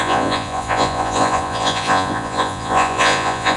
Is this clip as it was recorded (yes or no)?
no